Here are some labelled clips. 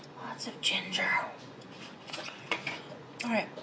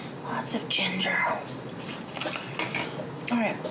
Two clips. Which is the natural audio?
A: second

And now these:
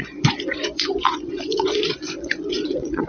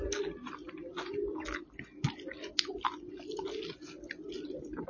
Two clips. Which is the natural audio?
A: second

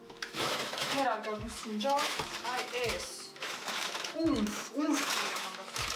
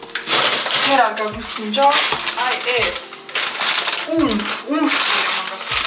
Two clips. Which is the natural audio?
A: second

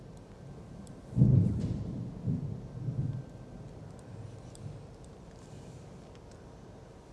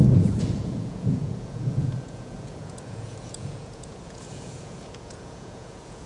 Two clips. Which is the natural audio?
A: first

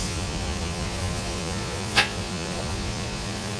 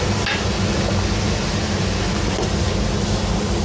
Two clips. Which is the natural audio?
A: second